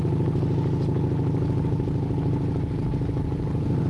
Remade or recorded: recorded